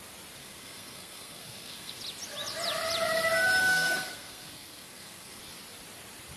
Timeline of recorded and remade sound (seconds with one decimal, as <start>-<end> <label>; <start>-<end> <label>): 0.0-0.4 recorded; 0.4-2.0 remade; 2.0-3.7 recorded; 3.7-5.4 remade; 5.4-6.4 recorded